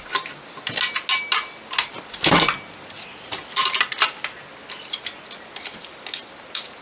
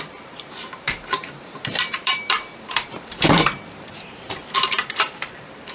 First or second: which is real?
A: first